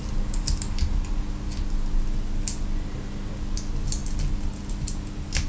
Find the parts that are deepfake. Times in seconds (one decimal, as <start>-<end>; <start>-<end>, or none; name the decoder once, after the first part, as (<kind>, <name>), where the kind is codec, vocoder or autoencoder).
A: none